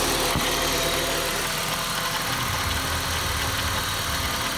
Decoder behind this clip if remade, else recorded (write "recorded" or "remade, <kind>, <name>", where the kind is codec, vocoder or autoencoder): recorded